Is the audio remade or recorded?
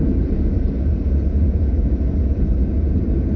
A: remade